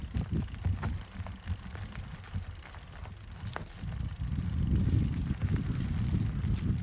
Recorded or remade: recorded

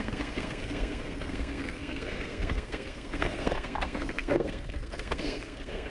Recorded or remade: remade